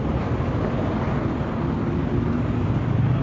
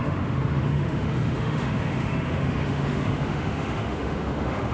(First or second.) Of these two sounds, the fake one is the second